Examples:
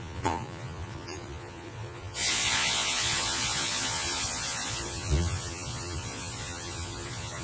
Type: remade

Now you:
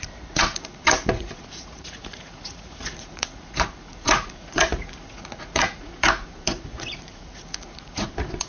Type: remade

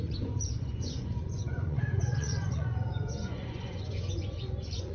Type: remade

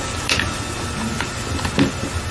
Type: recorded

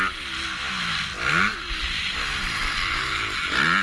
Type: recorded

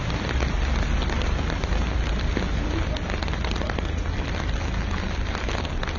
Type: recorded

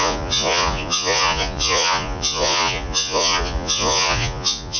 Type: remade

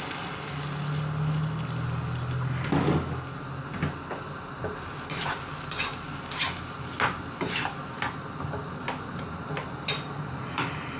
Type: recorded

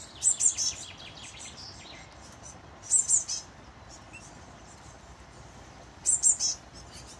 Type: recorded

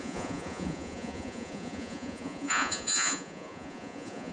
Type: remade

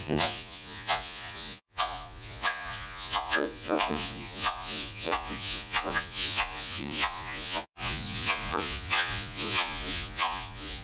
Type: remade